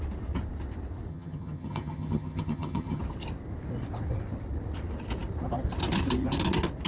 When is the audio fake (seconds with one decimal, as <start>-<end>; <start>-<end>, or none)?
1.1-3.0